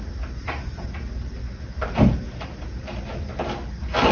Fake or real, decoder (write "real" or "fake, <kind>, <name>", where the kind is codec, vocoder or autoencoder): real